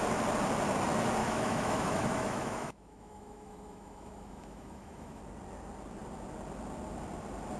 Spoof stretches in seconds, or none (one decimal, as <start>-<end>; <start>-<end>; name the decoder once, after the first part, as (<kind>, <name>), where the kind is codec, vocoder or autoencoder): 1.2-5.2 (autoencoder, DAC-VAE)